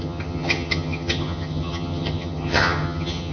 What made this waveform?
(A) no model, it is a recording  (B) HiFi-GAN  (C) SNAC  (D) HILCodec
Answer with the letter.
B